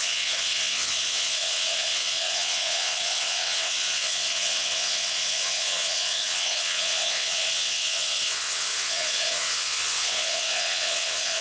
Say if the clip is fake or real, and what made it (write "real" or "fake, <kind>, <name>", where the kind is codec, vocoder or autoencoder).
fake, vocoder, WaveNeXt